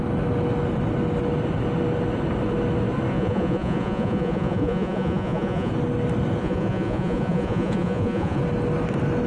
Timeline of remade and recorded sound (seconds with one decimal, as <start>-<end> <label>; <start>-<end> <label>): 0.0-3.1 recorded; 3.1-5.7 remade; 5.7-6.4 recorded; 6.4-8.4 remade; 8.4-9.3 recorded